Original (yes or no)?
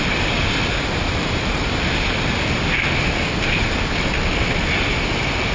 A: yes